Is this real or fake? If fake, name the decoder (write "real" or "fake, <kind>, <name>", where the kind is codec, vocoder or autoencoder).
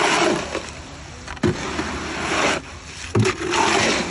real